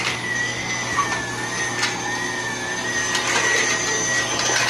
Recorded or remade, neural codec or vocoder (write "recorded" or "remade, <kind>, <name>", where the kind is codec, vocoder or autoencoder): recorded